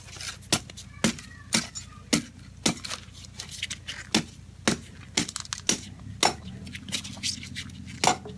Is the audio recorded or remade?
recorded